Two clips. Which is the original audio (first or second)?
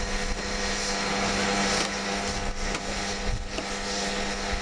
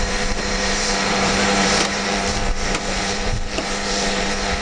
first